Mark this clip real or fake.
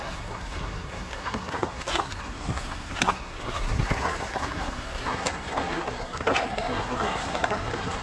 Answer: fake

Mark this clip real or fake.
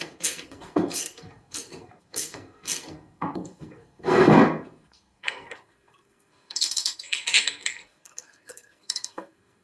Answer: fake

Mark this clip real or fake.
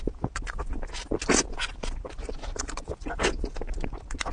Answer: real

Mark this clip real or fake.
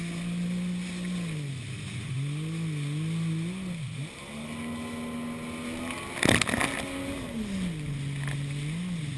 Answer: real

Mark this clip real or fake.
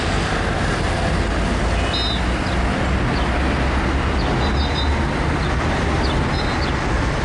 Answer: real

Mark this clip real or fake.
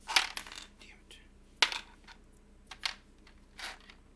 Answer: real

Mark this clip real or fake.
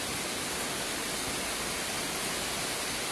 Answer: real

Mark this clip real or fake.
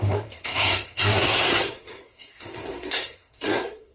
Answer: fake